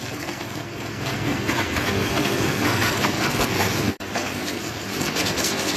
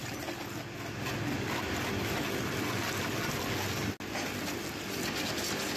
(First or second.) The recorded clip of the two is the second